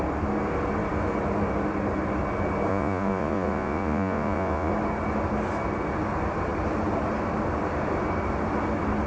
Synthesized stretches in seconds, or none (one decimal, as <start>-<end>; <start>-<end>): 2.7-4.7